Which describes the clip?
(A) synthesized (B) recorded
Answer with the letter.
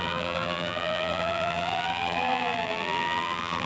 A